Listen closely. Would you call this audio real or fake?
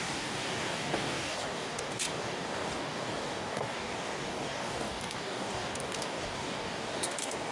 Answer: fake